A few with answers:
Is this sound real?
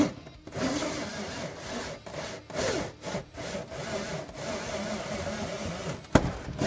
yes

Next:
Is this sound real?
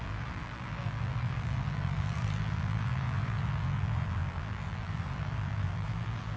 no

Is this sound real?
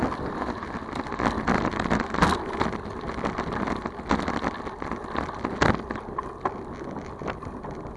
yes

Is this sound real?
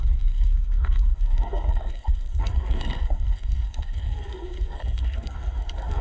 no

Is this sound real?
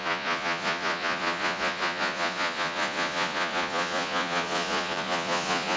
no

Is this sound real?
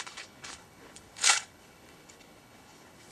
no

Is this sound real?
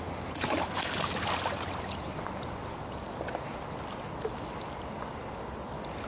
yes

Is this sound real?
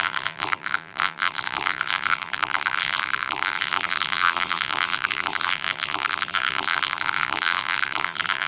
no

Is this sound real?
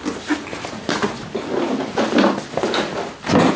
yes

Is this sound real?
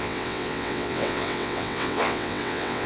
no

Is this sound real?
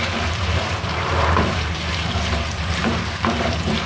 no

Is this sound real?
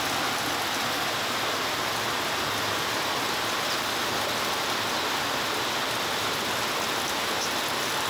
yes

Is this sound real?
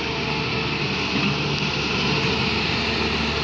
yes